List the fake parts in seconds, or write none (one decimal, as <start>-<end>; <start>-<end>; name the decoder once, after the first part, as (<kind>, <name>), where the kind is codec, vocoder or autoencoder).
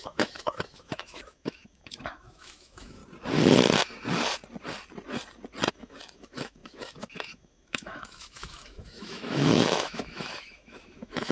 0.0-3.0 (autoencoder, DAC-VAE); 5.7-11.3